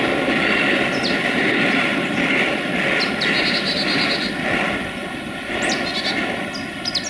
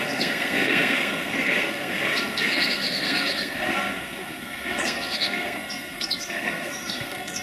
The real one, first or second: first